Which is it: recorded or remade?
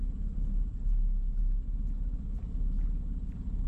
recorded